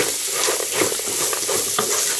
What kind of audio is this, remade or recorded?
recorded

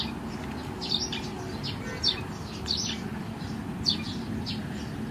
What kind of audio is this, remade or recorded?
recorded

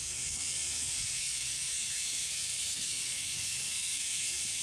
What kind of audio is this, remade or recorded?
remade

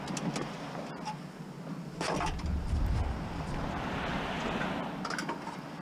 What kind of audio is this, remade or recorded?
recorded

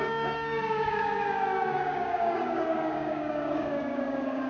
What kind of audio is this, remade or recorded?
remade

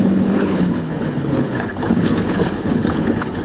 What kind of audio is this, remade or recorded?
remade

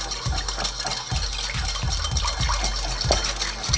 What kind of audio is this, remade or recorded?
recorded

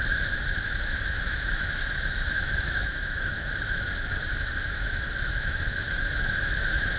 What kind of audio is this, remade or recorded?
remade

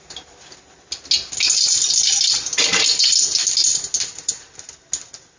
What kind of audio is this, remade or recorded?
recorded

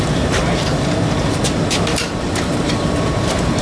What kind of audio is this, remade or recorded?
remade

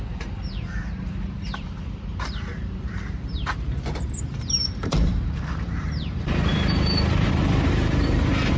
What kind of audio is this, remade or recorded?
remade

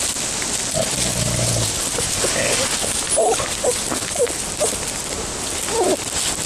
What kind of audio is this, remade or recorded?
recorded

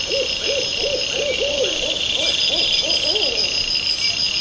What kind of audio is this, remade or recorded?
recorded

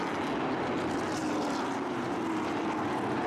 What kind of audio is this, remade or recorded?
recorded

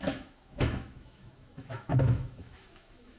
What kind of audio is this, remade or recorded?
remade